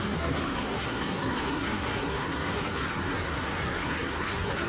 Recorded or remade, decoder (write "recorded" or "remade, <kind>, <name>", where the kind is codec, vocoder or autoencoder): remade, codec, SNAC